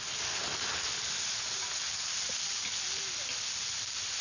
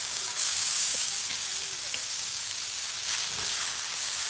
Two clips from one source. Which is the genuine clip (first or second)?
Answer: first